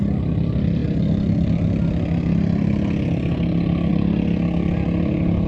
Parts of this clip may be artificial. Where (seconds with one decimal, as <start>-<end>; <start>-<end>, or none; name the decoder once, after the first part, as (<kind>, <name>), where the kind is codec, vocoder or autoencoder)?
none